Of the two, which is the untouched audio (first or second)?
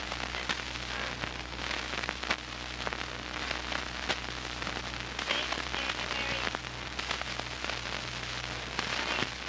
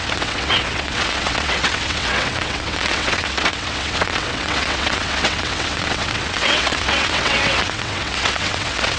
first